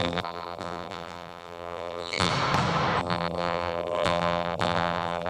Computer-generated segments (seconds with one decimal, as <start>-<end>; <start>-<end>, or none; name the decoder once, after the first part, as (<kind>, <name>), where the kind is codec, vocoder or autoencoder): 0.0-2.3 (vocoder, BigVGAN v2); 3.0-5.3